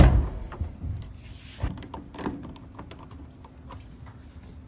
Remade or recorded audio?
recorded